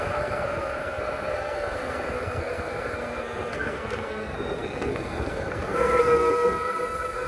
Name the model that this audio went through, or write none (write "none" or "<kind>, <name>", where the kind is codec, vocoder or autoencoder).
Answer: codec, SNAC